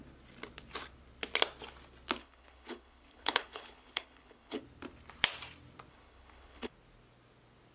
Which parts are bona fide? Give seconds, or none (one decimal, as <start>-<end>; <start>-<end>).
0.0-2.2; 4.6-5.9; 6.7-7.7